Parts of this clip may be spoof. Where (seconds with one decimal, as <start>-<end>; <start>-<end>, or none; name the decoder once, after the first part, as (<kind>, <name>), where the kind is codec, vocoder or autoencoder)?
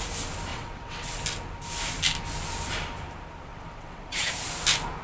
0.5-1.2 (vocoder, WaveNeXt); 3.5-4.3